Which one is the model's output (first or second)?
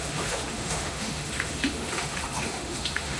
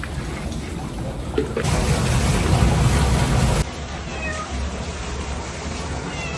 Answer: first